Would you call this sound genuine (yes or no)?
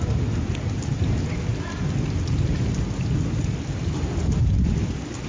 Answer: yes